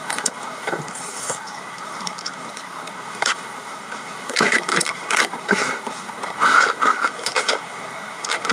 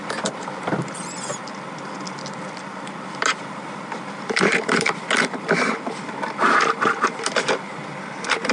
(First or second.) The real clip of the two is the second